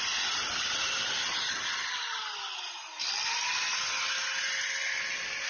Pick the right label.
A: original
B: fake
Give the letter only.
A